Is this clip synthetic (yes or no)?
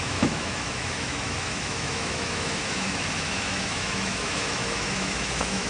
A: yes